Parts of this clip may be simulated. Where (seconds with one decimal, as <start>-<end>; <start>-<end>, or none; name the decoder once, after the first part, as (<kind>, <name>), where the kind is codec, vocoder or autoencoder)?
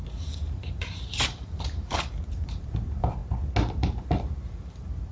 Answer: 0.0-3.2 (vocoder, BigVGAN v2); 3.8-5.1